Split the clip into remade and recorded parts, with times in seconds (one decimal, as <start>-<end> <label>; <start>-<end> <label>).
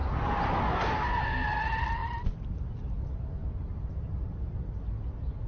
0.0-3.4 recorded; 3.4-4.5 remade; 4.5-5.5 recorded